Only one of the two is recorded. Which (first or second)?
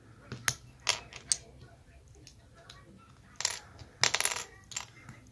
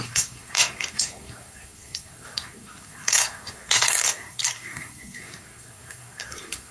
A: first